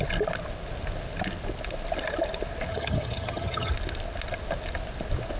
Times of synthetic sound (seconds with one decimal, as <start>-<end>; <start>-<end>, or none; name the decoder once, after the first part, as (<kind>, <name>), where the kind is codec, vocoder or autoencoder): 2.7-3.7 (vocoder, HiFi-GAN)